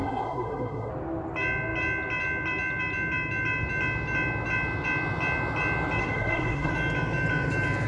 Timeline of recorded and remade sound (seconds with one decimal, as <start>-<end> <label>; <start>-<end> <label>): 0.0-0.9 remade; 0.9-6.0 recorded; 6.0-6.7 remade; 6.7-7.9 recorded